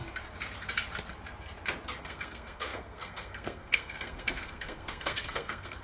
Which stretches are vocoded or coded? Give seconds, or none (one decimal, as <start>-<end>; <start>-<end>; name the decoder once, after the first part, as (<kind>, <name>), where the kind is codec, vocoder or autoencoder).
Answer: 2.0-5.8 (codec, SNAC)